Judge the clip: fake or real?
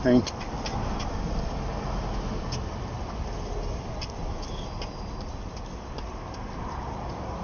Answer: real